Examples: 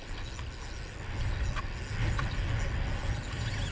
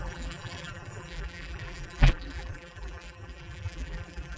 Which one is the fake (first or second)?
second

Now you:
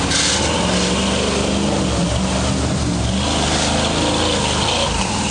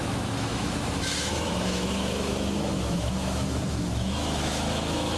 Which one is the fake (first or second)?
second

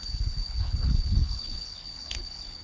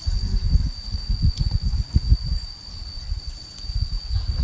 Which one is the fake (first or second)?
first